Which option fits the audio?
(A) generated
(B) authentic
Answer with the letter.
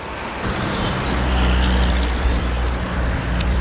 A